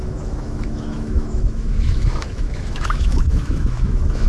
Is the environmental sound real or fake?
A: fake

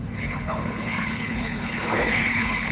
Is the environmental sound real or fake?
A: fake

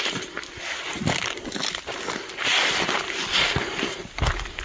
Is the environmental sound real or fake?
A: real